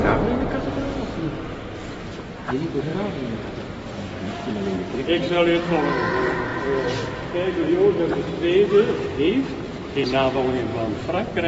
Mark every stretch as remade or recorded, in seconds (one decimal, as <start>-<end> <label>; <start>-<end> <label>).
0.0-11.5 recorded